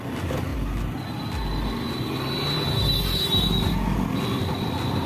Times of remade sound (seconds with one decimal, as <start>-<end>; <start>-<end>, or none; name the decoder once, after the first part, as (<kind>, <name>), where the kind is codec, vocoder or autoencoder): none